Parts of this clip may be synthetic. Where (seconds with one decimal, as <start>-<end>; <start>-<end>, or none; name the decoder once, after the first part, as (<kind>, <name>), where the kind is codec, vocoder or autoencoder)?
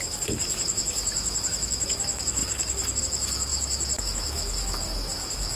0.0-5.6 (autoencoder, DAC-VAE)